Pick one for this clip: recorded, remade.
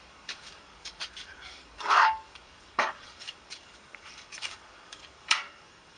remade